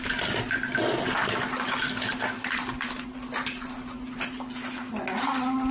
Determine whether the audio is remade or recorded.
recorded